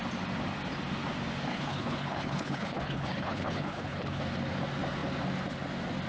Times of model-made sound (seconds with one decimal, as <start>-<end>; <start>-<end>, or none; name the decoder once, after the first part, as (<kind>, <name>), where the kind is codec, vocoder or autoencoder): 1.5-4.2 (codec, HILCodec)